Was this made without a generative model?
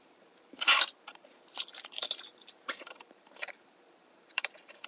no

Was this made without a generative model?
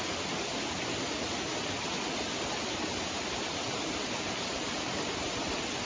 yes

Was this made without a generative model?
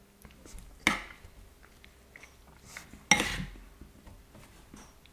yes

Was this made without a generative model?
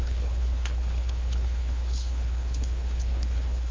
no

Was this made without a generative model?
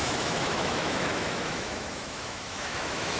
no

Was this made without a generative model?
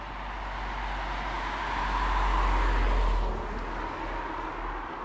yes